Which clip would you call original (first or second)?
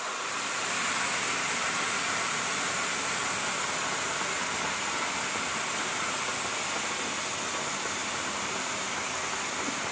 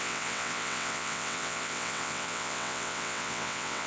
first